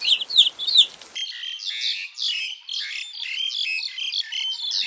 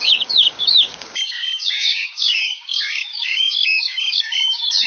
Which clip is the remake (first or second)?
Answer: second